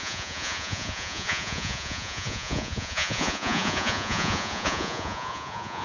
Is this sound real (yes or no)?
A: no